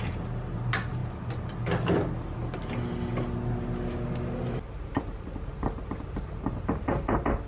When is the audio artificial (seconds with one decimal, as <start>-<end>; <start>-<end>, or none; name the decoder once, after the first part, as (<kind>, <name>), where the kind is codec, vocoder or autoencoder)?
none